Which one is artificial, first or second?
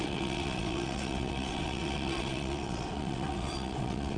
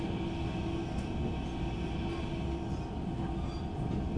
first